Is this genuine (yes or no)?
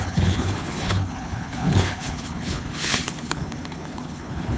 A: no